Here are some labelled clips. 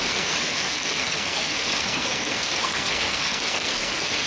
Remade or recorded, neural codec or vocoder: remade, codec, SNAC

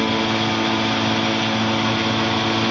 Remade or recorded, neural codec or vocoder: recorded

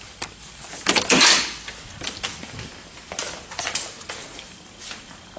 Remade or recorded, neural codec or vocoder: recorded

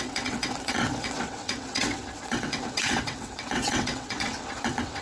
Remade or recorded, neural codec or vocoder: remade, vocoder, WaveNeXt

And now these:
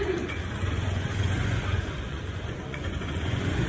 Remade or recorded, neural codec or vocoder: remade, vocoder, Vocos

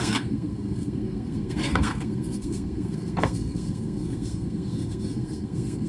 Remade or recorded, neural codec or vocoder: remade, codec, SNAC